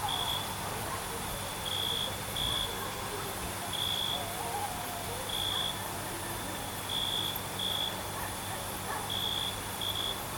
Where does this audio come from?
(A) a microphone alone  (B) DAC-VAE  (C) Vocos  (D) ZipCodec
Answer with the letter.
A